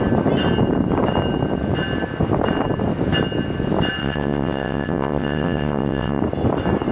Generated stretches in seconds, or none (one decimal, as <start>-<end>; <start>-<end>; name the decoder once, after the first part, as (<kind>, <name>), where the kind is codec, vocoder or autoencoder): 4.0-6.2 (vocoder, WaveNeXt)